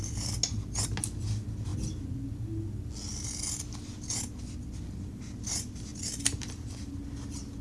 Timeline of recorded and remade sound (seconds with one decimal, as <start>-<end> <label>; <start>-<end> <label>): 0.0-5.9 recorded; 5.9-6.9 remade; 6.9-7.6 recorded